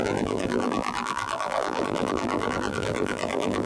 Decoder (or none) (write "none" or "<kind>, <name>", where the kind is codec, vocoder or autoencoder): vocoder, BigVGAN v2